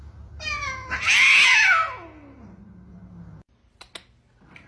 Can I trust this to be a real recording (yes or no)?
yes